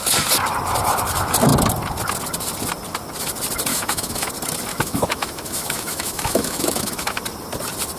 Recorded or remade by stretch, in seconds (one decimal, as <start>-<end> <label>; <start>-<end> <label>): 0.0-3.7 recorded; 3.7-4.3 remade; 4.3-4.7 recorded; 4.7-7.2 remade; 7.2-8.0 recorded